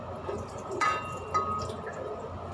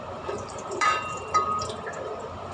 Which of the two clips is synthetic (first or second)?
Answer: second